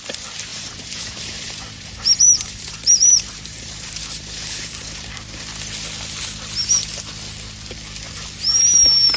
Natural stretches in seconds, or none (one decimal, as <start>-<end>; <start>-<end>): 0.0-0.5; 5.4-9.2